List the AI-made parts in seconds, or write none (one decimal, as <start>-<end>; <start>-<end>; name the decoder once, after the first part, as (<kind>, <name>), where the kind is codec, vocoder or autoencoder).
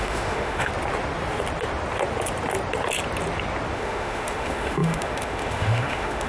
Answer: 0.0-0.7 (autoencoder, DAC-VAE); 3.7-6.3